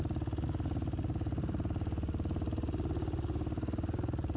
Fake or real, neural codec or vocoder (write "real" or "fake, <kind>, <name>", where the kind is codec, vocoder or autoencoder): real